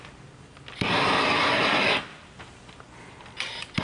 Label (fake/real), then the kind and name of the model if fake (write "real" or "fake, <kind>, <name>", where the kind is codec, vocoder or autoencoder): real